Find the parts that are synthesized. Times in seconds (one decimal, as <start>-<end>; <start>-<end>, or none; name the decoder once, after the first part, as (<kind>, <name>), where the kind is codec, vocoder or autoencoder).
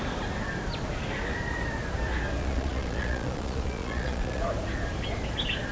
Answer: 2.4-4.4 (vocoder, Vocos)